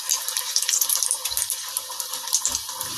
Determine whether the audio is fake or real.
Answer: real